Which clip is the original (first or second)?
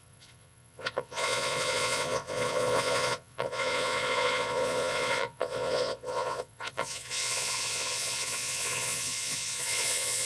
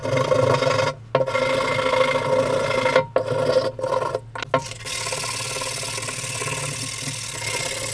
second